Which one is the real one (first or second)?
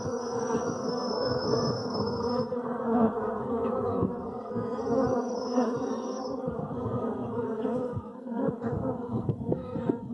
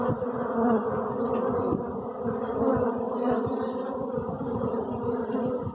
second